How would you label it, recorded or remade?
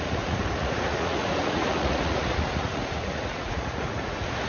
remade